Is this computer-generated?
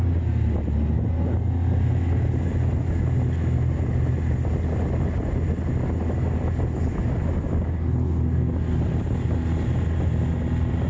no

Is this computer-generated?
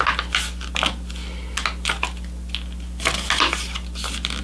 no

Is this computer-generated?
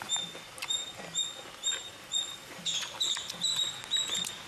no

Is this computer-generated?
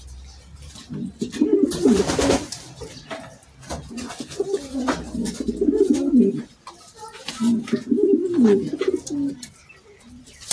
no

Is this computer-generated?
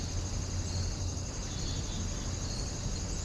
no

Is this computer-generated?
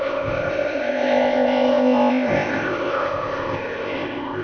yes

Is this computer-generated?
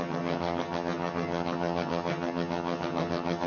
yes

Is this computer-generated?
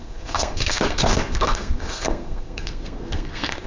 yes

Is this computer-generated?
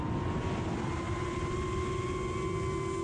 no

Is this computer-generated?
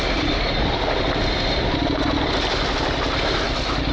no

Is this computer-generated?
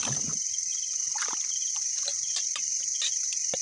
yes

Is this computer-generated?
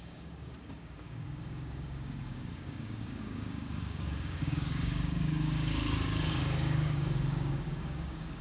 yes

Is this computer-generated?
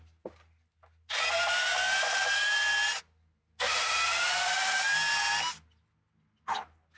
no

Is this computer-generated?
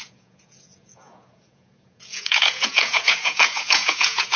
yes